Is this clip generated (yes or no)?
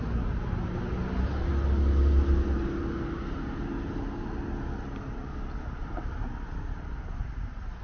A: no